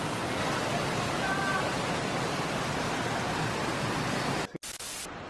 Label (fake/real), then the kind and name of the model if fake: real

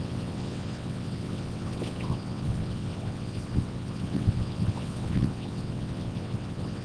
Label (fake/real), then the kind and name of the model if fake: fake, vocoder, WaveNeXt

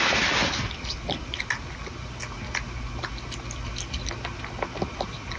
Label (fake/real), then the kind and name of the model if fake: real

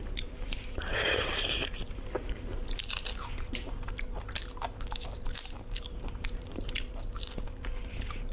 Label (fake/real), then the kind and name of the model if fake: fake, vocoder, BigVGAN v2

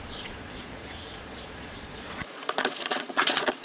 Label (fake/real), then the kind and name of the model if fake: fake, vocoder, Vocos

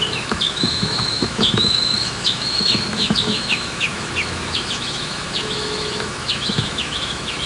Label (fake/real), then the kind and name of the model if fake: fake, autoencoder, DAC-VAE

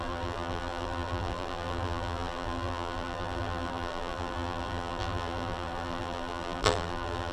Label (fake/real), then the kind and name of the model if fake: fake, vocoder, BigVGAN v2